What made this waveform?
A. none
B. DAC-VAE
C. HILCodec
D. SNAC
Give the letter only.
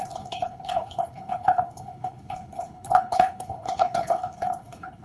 C